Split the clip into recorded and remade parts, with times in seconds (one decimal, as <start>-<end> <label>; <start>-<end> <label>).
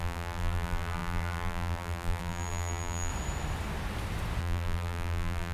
0.0-3.1 remade; 3.1-4.4 recorded; 4.4-5.5 remade